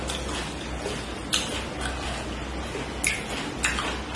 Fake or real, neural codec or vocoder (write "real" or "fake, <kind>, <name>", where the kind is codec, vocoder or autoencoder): real